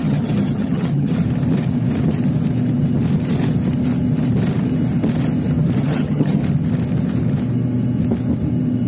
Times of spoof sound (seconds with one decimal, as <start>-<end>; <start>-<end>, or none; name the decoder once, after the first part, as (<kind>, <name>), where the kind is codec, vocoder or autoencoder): 0.0-1.1 (vocoder, HiFi-GAN); 5.8-6.4

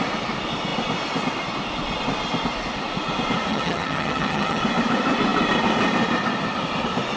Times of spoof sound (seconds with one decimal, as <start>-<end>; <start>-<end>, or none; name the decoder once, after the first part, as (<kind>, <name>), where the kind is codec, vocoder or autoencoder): 3.5-4.6 (vocoder, HiFi-GAN)

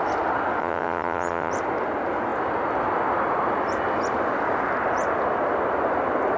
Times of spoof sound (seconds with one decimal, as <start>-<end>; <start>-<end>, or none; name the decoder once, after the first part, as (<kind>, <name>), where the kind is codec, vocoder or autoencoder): 0.6-1.5 (vocoder, HiFi-GAN)

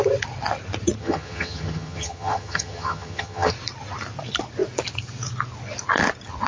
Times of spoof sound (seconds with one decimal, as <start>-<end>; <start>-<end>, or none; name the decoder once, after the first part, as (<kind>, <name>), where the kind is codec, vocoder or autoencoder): 1.0-3.5 (vocoder, HiFi-GAN)

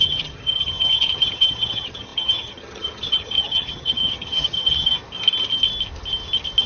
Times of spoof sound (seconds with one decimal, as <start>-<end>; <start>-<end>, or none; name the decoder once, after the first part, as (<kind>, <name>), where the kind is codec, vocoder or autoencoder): 0.0-5.0 (vocoder, HiFi-GAN)

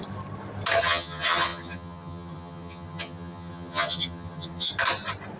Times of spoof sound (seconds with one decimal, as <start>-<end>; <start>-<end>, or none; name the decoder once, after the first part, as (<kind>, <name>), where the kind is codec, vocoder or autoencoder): 0.8-4.7 (vocoder, HiFi-GAN)

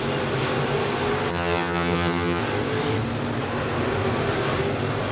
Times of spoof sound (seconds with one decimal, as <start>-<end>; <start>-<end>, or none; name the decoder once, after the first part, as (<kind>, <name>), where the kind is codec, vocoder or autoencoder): 1.3-2.4 (vocoder, HiFi-GAN)

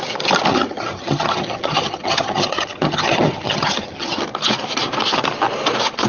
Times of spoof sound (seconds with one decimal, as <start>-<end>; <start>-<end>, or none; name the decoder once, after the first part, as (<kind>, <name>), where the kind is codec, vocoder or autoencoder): 0.5-4.2 (vocoder, HiFi-GAN)